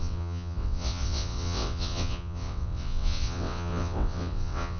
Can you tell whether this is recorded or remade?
remade